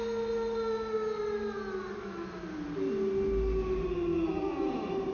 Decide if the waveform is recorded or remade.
recorded